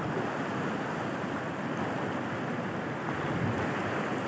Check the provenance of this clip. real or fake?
real